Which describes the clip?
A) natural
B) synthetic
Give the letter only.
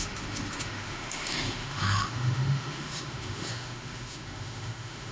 B